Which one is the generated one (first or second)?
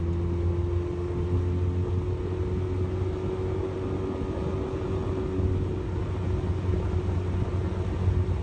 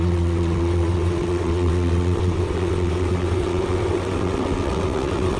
second